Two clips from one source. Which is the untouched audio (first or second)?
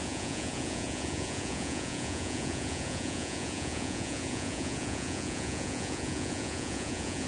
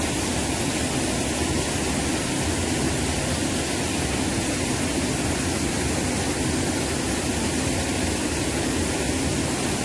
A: second